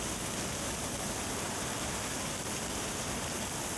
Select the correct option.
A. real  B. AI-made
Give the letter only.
A